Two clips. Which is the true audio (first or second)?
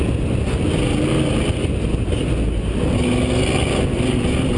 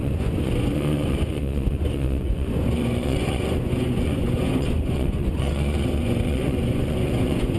first